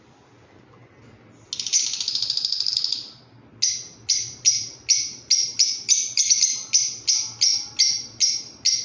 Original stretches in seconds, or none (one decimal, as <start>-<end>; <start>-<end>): 0.0-8.8